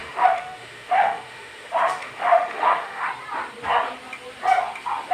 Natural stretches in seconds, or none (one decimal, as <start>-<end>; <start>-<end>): 3.1-5.1